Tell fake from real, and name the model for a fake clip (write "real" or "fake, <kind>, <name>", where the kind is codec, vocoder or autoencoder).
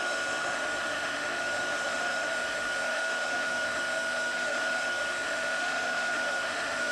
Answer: fake, autoencoder, DAC-VAE